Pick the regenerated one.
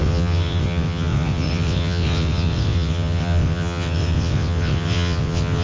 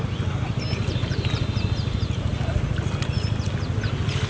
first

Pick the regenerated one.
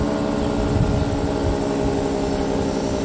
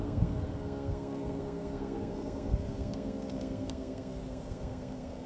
second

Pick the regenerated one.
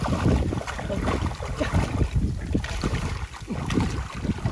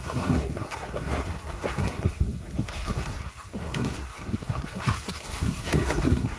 second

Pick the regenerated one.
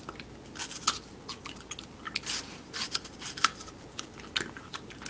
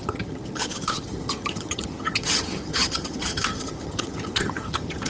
second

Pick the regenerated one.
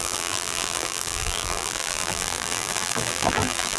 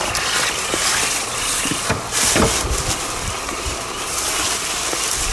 first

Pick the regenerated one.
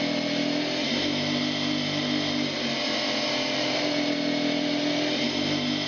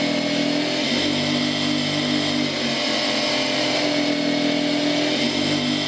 first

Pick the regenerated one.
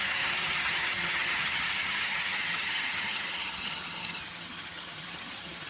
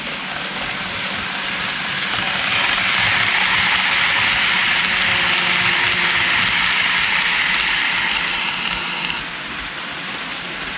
first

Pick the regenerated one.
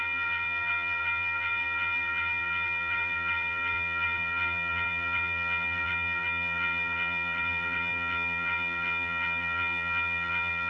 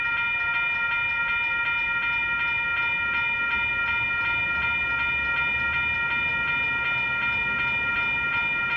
first